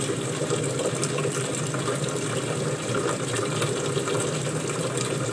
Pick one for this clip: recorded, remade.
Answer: recorded